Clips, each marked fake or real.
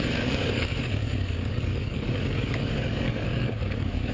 fake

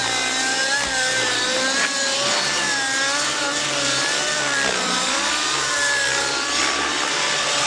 real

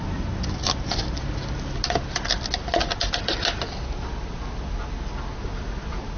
real